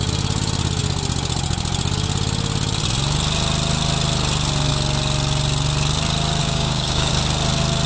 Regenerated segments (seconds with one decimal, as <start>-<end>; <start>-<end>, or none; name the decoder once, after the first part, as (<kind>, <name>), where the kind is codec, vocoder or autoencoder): 6.4-7.1 (codec, DAC)